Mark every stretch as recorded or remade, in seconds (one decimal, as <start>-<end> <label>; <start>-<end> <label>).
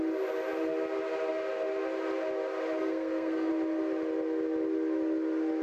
0.0-2.8 recorded; 2.8-3.5 remade; 3.5-5.6 recorded